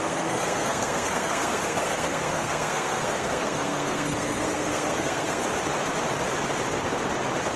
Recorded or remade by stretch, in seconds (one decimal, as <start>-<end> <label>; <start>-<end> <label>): 0.0-5.4 remade; 5.4-7.6 recorded